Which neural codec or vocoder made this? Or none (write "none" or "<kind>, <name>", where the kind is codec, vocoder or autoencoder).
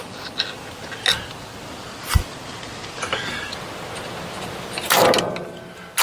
none